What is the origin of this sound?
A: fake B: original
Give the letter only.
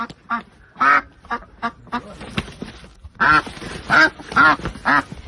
B